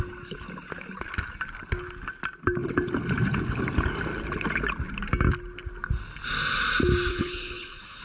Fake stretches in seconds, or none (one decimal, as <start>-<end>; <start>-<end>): 7.1-8.0